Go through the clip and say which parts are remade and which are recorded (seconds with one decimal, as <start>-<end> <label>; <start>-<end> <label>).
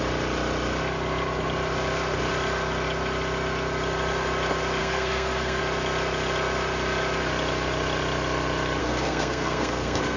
0.0-4.8 recorded; 4.8-5.6 remade; 5.6-8.8 recorded; 8.8-10.2 remade